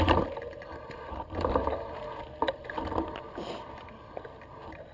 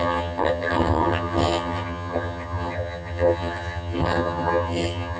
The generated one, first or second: second